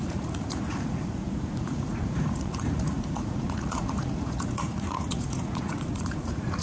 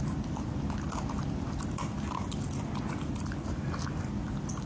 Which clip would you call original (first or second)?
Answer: second